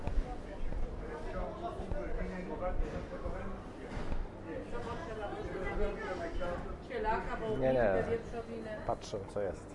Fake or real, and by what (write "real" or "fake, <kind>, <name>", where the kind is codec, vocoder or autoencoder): real